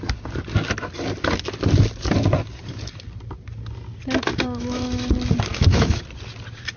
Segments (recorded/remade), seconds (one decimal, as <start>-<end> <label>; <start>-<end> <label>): 0.0-4.3 recorded; 4.3-5.1 remade; 5.1-5.5 recorded; 5.5-6.0 remade; 6.0-6.8 recorded